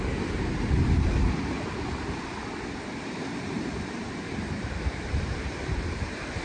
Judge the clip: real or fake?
fake